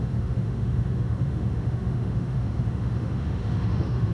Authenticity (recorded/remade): remade